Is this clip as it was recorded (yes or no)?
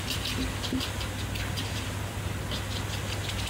yes